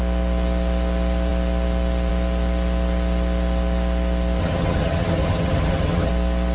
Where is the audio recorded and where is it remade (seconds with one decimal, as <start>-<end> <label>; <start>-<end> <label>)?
0.0-4.4 recorded; 4.4-6.1 remade; 6.1-6.5 recorded